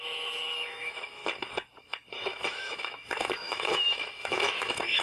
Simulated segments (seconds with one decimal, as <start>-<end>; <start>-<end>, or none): 0.0-1.2; 2.2-5.0